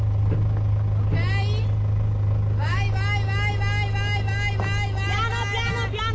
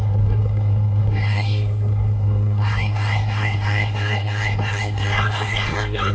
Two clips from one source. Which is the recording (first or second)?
first